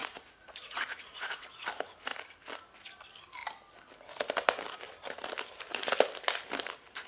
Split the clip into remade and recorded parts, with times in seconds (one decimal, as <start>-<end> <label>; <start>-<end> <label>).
0.0-1.6 remade; 1.6-7.1 recorded